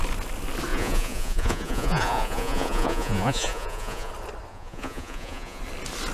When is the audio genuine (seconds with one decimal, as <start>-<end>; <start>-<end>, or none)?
0.0-0.7; 4.1-4.5; 5.6-6.1